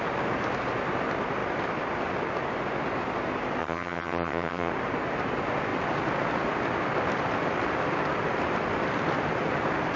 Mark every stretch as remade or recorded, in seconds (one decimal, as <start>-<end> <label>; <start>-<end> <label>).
0.0-3.6 recorded; 3.6-4.7 remade; 4.7-10.0 recorded